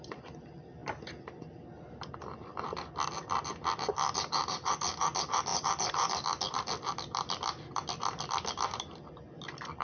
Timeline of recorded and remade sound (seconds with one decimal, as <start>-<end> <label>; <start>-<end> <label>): 0.0-9.8 recorded